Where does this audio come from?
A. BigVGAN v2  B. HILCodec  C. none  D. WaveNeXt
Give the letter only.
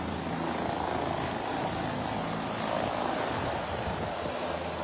C